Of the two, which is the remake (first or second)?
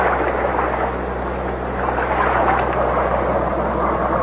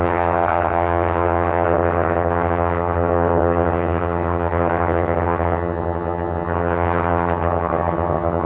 second